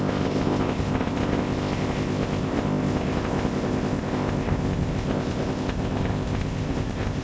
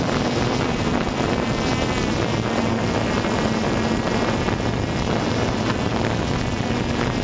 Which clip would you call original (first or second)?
second